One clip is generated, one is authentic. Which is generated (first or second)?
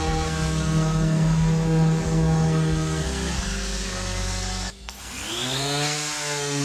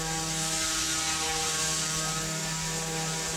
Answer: first